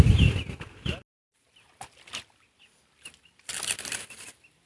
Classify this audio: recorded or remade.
recorded